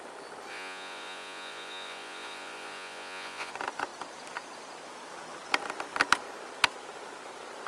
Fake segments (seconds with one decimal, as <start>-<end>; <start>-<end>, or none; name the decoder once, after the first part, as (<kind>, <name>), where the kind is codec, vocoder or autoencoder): 0.5-3.5 (vocoder, Vocos)